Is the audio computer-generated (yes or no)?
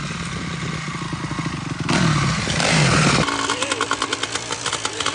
no